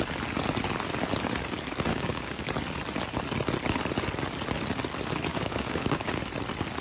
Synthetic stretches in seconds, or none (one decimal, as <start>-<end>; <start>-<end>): 1.9-2.5; 5.3-6.2